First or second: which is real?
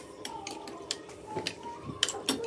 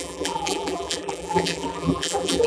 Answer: first